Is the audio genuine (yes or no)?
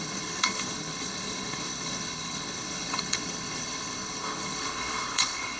no